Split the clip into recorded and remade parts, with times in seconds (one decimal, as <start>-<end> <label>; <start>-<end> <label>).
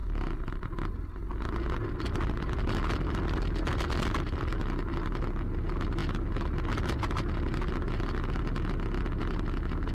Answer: 0.0-9.9 recorded